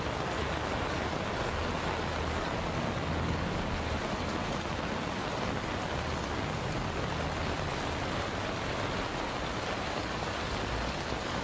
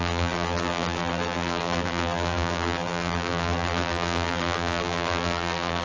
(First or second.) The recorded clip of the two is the first